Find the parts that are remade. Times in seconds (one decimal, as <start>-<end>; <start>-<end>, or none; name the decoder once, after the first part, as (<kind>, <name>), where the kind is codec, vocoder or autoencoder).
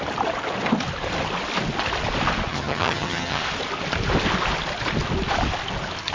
2.5-3.4 (vocoder, HiFi-GAN)